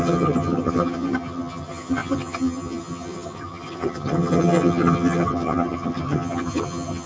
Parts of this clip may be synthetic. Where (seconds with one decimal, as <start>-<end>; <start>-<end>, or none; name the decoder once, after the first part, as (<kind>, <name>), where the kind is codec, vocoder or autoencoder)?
0.0-7.1 (vocoder, HiFi-GAN)